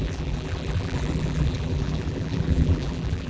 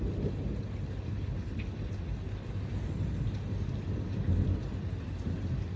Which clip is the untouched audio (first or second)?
second